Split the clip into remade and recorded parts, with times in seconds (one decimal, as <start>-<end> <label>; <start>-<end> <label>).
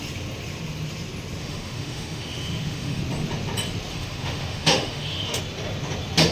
0.0-1.4 recorded; 1.4-3.0 remade; 3.0-3.9 recorded; 3.9-5.4 remade; 5.4-6.3 recorded